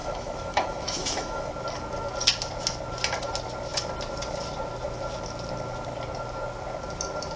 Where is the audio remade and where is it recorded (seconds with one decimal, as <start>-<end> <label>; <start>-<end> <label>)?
0.0-1.5 remade; 1.5-7.4 recorded